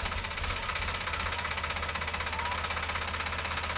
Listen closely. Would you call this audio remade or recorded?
recorded